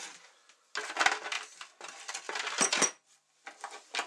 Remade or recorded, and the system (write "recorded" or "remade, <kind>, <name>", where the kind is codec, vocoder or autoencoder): recorded